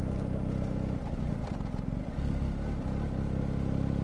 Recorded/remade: recorded